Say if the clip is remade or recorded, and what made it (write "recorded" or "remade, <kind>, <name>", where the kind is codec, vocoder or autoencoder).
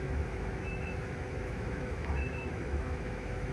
remade, autoencoder, DAC-VAE